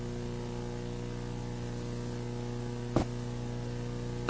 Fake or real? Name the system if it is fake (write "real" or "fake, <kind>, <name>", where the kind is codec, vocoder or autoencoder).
real